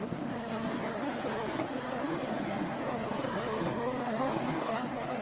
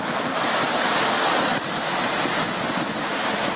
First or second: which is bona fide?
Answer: second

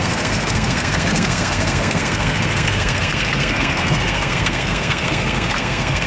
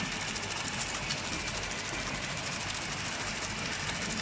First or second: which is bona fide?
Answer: second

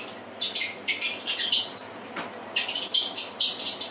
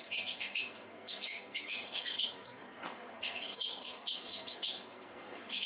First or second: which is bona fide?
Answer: first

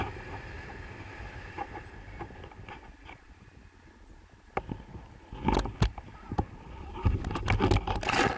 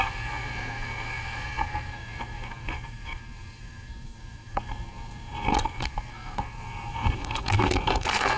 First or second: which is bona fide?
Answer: first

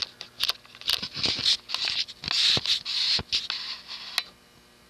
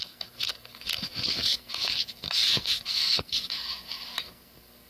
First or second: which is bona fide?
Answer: first